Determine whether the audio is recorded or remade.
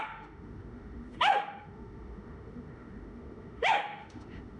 remade